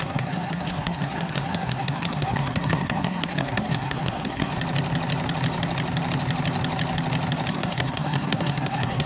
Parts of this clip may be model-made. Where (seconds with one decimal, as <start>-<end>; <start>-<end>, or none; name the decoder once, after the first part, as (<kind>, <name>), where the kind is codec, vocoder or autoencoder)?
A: 0.0-4.5 (codec, SNAC); 7.5-9.1